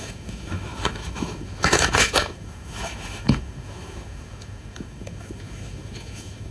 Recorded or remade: remade